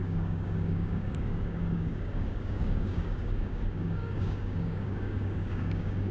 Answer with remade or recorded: remade